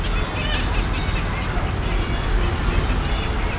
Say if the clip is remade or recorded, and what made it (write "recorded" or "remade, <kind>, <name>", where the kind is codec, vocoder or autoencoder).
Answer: recorded